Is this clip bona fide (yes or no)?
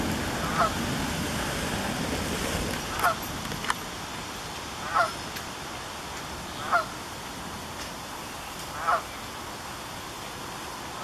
yes